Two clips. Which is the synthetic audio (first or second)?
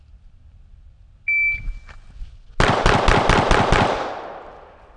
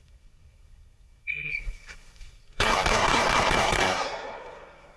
second